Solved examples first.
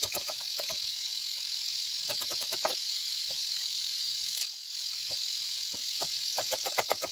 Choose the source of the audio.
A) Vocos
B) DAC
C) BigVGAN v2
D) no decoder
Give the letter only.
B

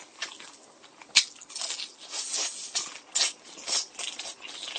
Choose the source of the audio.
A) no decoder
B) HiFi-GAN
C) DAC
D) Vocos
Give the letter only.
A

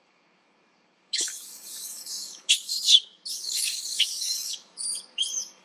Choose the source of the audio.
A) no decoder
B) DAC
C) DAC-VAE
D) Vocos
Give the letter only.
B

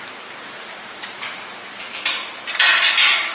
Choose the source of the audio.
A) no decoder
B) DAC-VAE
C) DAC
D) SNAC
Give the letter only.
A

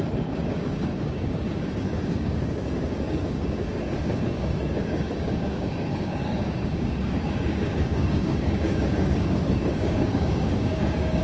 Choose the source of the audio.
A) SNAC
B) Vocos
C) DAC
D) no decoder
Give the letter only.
C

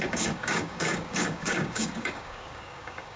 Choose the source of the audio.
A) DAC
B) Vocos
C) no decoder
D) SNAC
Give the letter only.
A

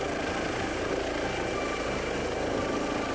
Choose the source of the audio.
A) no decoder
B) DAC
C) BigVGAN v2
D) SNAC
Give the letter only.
A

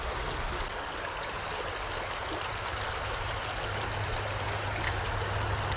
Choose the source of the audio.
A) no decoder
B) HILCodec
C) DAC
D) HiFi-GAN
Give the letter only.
A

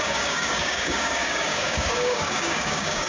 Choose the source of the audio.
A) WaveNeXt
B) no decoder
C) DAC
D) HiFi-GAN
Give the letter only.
C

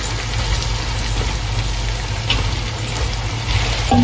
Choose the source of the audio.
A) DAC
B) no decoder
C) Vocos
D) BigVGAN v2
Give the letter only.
B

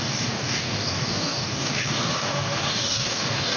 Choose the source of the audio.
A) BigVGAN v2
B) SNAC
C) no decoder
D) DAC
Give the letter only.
D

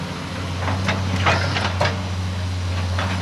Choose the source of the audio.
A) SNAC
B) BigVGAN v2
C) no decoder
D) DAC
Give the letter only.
C